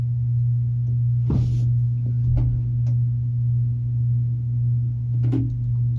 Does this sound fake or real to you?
real